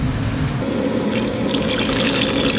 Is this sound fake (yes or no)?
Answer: no